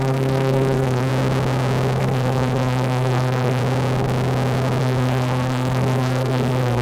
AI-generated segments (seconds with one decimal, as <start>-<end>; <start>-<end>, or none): 0.0-1.1; 2.0-3.6; 4.8-6.8